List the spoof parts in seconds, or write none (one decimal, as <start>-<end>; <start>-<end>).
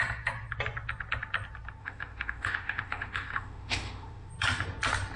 1.8-4.3